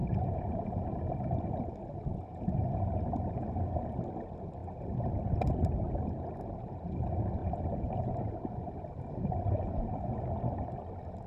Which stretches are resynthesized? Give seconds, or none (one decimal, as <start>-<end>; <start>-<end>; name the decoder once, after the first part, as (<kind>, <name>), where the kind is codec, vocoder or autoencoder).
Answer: 0.0-1.7 (vocoder, BigVGAN v2); 2.1-3.0; 7.4-10.1